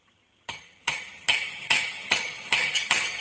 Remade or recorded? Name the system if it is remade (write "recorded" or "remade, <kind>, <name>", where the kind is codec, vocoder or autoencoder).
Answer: remade, vocoder, HiFi-GAN